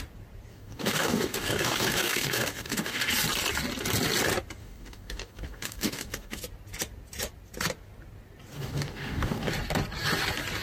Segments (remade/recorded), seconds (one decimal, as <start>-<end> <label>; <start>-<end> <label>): 0.0-0.5 recorded; 0.5-3.1 remade; 3.1-4.6 recorded; 4.6-6.4 remade; 6.4-8.5 recorded; 8.5-9.5 remade; 9.5-10.6 recorded